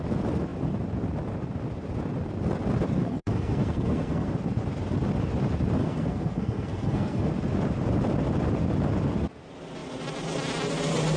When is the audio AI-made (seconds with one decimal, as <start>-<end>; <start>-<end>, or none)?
3.0-4.3; 5.8-7.3